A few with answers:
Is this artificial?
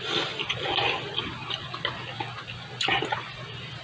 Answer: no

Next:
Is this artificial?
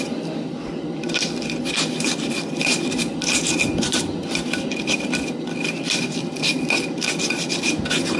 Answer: yes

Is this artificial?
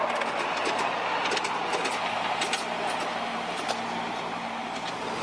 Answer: no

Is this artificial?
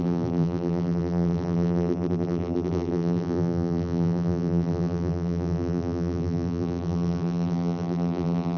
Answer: yes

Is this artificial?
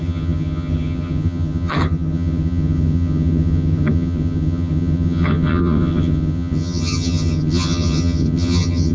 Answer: yes